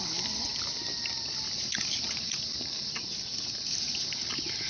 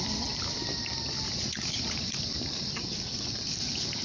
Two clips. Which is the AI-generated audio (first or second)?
second